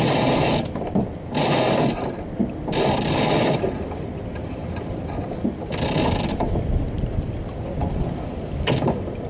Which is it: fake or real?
real